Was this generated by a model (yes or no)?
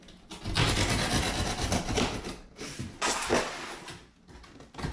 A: no